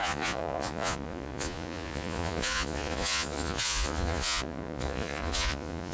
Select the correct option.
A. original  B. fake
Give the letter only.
B